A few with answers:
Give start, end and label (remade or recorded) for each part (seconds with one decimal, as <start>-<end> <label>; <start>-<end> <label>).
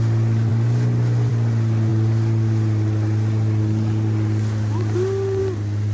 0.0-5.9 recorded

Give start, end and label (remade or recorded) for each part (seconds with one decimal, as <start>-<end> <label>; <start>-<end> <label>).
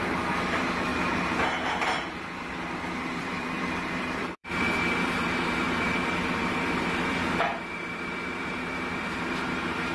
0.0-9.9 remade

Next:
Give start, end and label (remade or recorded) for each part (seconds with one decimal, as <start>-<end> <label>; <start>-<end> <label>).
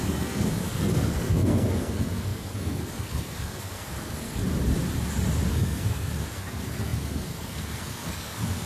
0.0-4.4 remade; 4.4-5.5 recorded; 5.5-8.7 remade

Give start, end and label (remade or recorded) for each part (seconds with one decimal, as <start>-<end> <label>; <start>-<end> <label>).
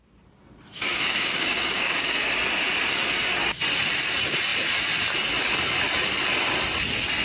0.0-0.9 recorded; 0.9-2.3 remade; 2.3-7.2 recorded